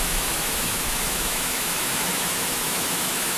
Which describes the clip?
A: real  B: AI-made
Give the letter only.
B